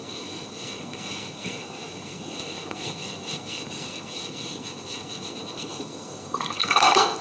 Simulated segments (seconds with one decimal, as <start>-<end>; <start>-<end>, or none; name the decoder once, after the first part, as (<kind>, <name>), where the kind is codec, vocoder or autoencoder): 0.0-7.2 (codec, SNAC)